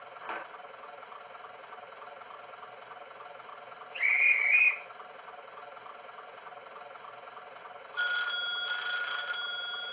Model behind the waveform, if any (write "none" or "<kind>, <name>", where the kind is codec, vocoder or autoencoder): none